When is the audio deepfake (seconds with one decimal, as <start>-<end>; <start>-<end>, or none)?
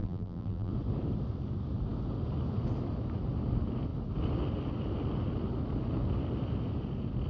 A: 0.0-0.7